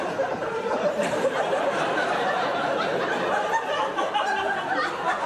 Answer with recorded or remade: remade